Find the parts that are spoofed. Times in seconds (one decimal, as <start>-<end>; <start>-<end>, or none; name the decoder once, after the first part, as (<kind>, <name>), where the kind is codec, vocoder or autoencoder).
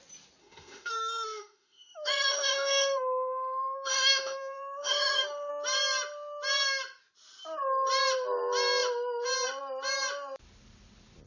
0.4-5.5 (autoencoder, DAC-VAE)